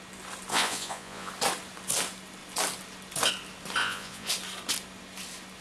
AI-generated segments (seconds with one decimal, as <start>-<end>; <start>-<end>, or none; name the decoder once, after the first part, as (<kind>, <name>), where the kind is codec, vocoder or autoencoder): 0.5-1.3 (vocoder, Vocos); 3.8-4.3